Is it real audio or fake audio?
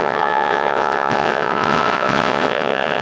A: fake